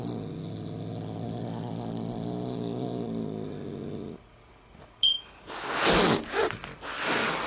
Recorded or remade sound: recorded